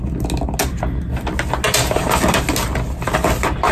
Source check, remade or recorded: recorded